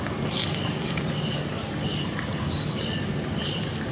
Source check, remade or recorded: recorded